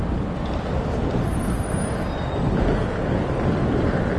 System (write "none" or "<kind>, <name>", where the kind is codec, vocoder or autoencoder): none